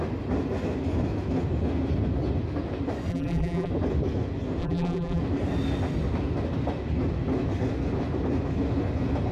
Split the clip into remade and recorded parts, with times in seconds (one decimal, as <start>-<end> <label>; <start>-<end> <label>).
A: 0.0-3.1 recorded; 3.1-3.7 remade; 3.7-4.6 recorded; 4.6-5.2 remade; 5.2-9.3 recorded